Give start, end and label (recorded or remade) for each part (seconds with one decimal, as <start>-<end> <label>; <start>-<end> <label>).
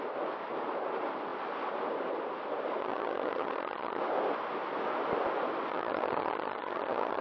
0.0-2.8 recorded; 2.8-4.0 remade; 4.0-5.7 recorded; 5.7-7.2 remade